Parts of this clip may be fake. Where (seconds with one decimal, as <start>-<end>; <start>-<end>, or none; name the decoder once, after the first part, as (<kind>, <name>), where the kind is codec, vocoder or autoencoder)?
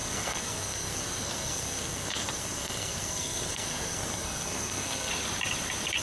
0.0-5.1 (codec, SNAC)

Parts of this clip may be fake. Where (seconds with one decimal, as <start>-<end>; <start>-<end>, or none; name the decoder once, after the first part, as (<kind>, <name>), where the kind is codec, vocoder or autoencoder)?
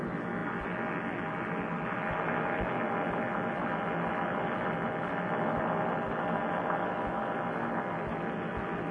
none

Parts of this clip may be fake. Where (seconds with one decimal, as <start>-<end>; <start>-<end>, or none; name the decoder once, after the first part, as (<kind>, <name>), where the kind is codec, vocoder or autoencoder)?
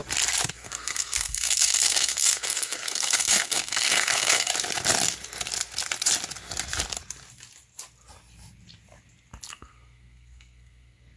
0.5-4.5 (codec, SNAC); 9.5-11.2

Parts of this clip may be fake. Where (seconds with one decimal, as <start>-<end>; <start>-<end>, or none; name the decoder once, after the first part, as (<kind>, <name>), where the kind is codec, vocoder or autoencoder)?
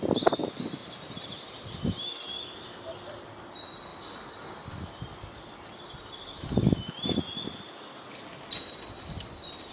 none